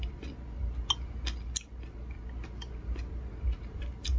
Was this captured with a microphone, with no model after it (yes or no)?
yes